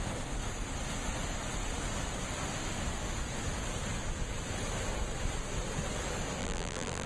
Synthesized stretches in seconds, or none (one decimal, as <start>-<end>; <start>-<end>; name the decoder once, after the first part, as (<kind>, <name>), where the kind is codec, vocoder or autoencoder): 6.4-7.1 (vocoder, BigVGAN v2)